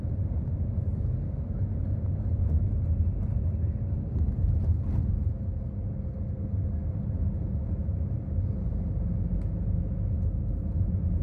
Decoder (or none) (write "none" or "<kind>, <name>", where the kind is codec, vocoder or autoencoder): none